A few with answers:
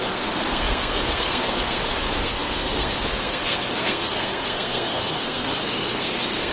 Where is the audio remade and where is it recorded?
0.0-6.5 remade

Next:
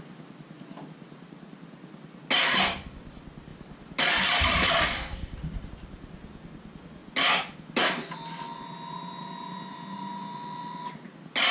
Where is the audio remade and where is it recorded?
0.0-11.5 recorded

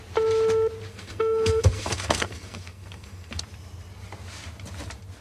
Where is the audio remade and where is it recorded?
0.0-0.9 recorded; 0.9-3.4 remade; 3.4-5.2 recorded

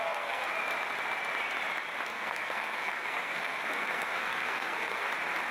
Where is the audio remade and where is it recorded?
0.0-0.5 remade; 0.5-2.1 recorded; 2.1-5.1 remade; 5.1-5.5 recorded

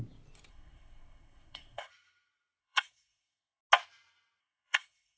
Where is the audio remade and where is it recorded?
0.0-0.5 recorded; 0.5-1.9 remade; 1.9-2.6 recorded; 2.6-3.6 remade; 3.6-4.4 recorded; 4.4-5.2 remade

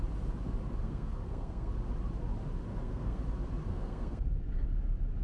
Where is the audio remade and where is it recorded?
0.0-0.8 recorded; 0.8-1.7 remade; 1.7-2.7 recorded; 2.7-3.2 remade; 3.2-3.7 recorded; 3.7-4.5 remade; 4.5-5.2 recorded